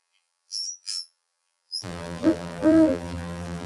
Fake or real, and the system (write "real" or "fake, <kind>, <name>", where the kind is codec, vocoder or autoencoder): fake, vocoder, BigVGAN v2